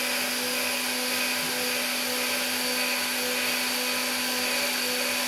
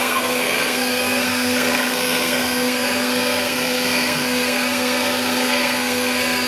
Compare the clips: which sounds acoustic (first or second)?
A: first